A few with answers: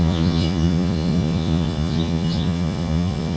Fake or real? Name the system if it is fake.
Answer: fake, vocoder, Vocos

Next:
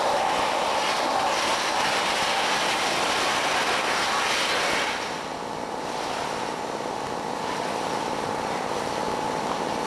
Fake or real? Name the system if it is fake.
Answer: real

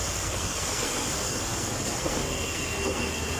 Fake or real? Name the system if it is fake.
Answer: fake, codec, SNAC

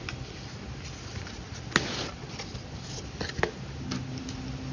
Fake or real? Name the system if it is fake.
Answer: real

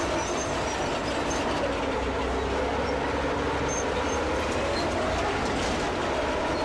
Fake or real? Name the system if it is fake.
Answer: real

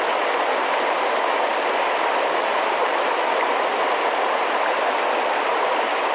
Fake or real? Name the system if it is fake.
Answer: real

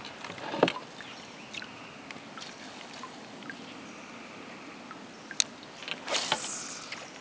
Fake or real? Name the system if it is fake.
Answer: real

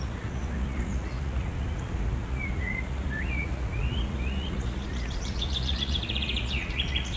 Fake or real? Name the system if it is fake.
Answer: fake, vocoder, Vocos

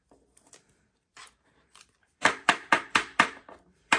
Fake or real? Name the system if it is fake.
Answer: fake, vocoder, BigVGAN v2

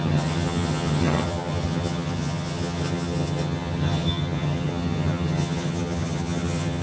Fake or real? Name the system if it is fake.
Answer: fake, vocoder, HiFi-GAN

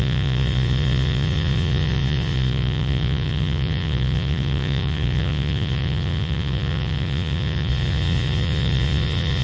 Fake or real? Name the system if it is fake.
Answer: fake, vocoder, Vocos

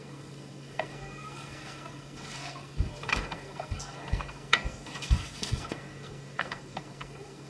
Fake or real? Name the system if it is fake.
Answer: fake, codec, SNAC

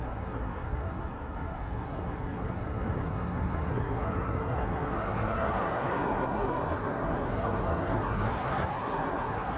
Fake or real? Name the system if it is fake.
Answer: fake, codec, SNAC